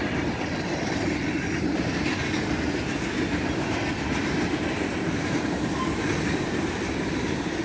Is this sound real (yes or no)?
yes